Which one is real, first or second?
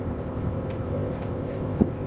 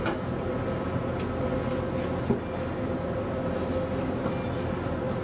second